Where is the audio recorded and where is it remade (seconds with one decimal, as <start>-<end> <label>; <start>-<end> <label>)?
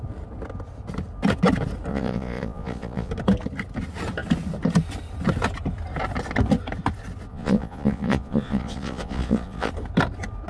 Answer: 0.0-1.9 recorded; 1.9-3.1 remade; 3.1-7.3 recorded; 7.3-9.7 remade; 9.7-10.5 recorded